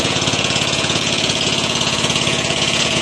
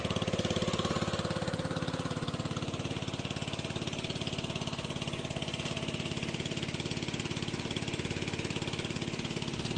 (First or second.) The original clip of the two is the second